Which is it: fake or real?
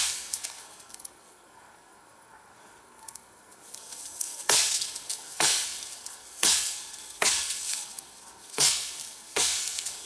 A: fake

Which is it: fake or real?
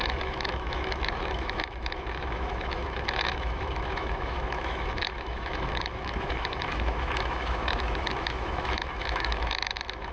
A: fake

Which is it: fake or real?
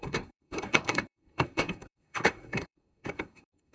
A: fake